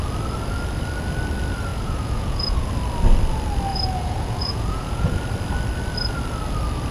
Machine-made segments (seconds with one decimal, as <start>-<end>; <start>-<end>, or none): 1.7-2.7; 3.7-5.2